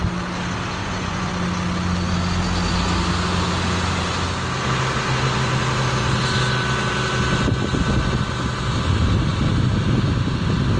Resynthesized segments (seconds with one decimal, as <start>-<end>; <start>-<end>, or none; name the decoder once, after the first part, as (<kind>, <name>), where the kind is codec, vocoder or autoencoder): 0.8-1.3 (vocoder, Vocos)